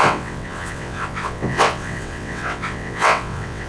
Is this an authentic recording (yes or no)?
no